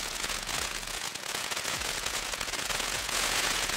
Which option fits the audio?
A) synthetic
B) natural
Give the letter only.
A